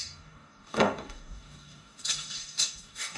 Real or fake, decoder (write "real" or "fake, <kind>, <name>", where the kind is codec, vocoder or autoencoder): fake, codec, DAC